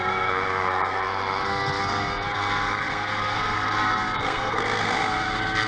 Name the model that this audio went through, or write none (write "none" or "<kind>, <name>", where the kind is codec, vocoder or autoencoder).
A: codec, SNAC